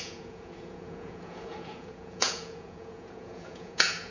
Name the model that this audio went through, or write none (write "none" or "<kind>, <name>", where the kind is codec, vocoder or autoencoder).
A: vocoder, Vocos